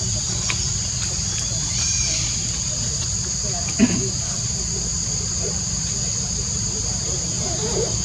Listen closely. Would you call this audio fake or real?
real